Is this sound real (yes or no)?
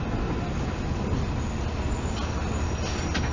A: yes